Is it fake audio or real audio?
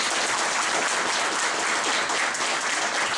real